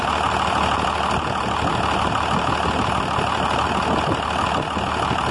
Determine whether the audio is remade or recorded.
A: recorded